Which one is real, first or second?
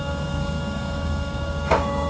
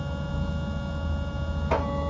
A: second